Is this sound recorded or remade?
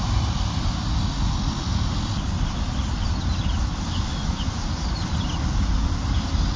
recorded